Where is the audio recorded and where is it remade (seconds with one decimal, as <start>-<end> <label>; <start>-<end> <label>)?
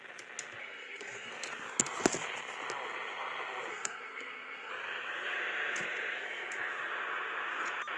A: 0.0-0.6 recorded; 0.6-1.3 remade; 1.3-3.7 recorded; 3.7-4.7 remade; 4.7-8.0 recorded